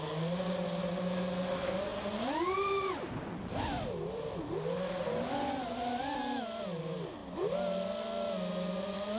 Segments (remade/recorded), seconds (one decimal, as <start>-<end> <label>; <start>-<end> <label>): 0.0-9.2 recorded